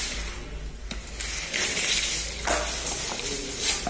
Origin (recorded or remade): recorded